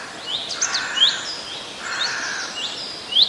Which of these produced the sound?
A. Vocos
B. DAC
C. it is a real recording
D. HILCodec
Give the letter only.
C